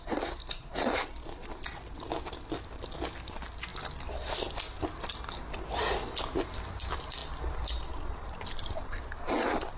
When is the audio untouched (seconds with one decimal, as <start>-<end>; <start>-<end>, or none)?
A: 0.0-9.8